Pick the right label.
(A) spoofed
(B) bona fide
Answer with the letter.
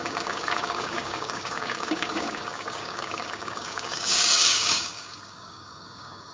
A